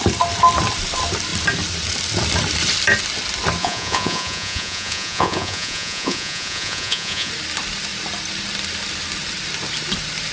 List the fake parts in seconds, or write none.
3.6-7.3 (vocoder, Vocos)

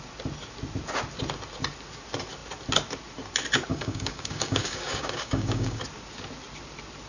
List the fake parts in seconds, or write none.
3.7-5.8 (codec, DAC)

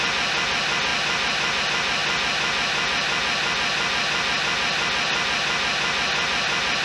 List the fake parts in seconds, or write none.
none

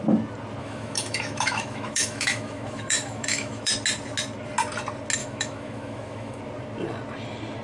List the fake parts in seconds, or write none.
0.6-3.7 (autoencoder, DAC-VAE); 5.2-6.4

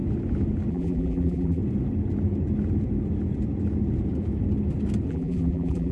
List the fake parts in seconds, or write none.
0.7-1.6 (vocoder, BigVGAN v2); 5.1-5.9

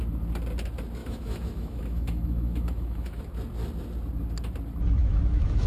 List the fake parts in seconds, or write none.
1.0-3.2 (autoencoder, DAC-VAE); 5.0-5.7